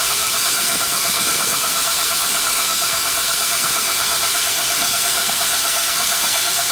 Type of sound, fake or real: fake